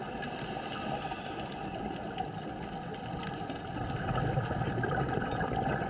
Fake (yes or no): no